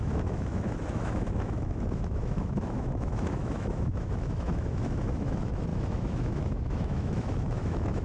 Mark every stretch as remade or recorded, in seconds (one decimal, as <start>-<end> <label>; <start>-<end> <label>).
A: 0.0-8.0 remade